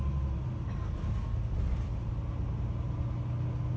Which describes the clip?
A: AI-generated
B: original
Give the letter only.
B